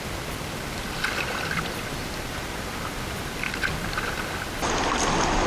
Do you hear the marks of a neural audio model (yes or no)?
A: yes